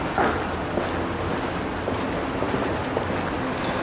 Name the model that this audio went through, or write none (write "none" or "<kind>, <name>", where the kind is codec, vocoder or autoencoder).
none